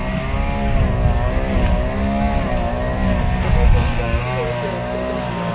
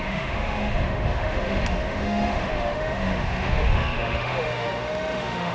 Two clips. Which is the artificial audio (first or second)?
second